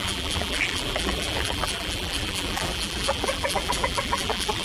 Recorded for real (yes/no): no